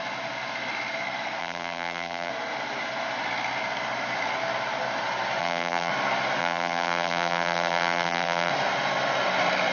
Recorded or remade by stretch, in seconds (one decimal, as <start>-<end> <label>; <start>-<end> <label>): 0.0-1.4 recorded; 1.4-2.3 remade; 2.3-5.4 recorded; 5.4-5.9 remade; 5.9-6.4 recorded; 6.4-8.5 remade; 8.5-9.7 recorded